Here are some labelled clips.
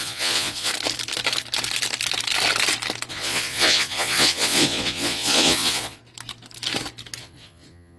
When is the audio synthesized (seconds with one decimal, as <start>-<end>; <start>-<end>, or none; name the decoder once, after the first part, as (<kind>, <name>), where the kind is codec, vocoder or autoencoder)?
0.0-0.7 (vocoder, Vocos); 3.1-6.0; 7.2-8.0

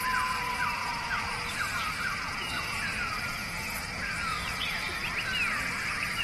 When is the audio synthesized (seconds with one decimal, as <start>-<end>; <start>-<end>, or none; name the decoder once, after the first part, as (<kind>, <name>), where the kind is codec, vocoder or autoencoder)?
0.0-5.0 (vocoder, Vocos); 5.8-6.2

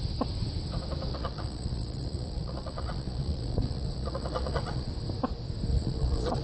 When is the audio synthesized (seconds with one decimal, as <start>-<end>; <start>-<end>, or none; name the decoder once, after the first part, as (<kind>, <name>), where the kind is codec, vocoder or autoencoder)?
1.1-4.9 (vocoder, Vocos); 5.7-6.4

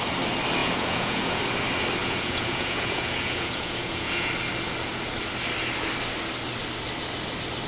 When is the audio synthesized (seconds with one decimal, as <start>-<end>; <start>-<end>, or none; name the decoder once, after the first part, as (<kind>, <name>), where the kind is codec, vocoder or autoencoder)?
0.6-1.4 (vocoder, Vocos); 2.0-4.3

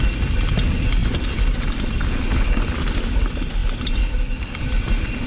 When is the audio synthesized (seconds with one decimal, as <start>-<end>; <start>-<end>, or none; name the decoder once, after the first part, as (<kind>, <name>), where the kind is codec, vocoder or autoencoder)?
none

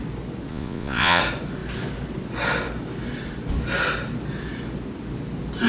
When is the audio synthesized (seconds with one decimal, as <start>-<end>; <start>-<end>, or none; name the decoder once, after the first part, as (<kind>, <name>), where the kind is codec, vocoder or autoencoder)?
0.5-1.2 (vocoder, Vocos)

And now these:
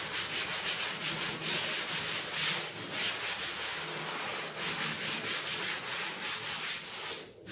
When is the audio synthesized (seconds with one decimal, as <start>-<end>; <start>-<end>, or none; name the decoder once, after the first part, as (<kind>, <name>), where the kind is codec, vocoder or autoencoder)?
0.5-1.4 (vocoder, Vocos); 5.5-6.1